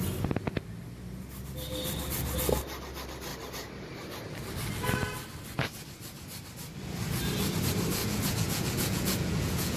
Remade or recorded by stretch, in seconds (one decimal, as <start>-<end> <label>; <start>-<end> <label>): 0.0-8.0 recorded; 8.0-9.8 remade